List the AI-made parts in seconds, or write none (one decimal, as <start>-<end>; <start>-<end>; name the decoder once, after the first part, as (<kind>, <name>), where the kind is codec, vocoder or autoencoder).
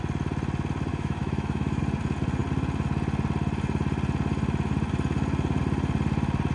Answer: 0.9-1.8 (autoencoder, DAC-VAE)